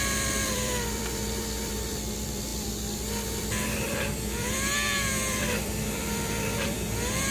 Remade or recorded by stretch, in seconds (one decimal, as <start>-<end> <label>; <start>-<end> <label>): 0.0-7.3 remade